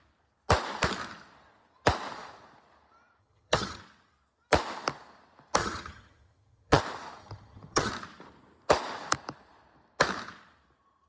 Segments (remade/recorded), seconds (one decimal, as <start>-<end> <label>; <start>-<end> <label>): 0.0-3.2 recorded; 3.2-3.8 remade; 3.8-5.6 recorded; 5.6-6.8 remade; 6.8-7.2 recorded; 7.2-7.9 remade; 7.9-11.1 recorded